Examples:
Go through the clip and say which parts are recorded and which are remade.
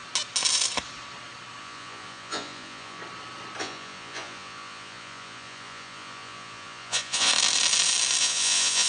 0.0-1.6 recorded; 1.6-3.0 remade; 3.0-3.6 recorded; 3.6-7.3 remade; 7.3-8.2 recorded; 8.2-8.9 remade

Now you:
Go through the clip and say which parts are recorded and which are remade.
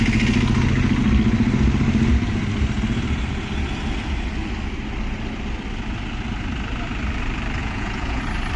0.0-7.6 recorded; 7.6-8.2 remade; 8.2-8.6 recorded